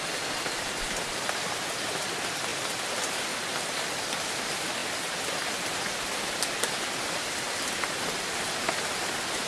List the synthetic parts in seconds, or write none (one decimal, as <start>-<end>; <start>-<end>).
none